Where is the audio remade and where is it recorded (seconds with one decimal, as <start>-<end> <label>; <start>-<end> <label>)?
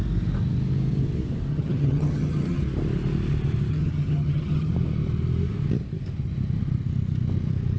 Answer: 0.0-1.5 recorded; 1.5-2.6 remade; 2.6-3.7 recorded; 3.7-4.7 remade; 4.7-7.8 recorded